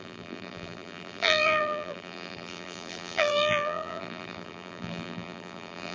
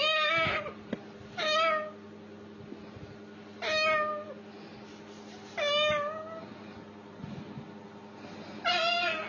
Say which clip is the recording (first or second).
second